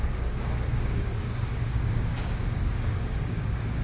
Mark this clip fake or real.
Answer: fake